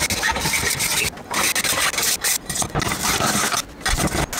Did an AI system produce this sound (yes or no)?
no